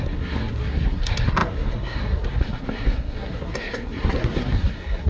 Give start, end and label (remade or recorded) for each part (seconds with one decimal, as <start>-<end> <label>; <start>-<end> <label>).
0.0-5.1 remade